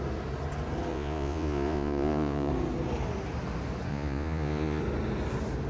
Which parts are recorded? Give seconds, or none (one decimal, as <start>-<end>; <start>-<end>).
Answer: 0.0-0.9; 2.5-3.9; 4.8-5.7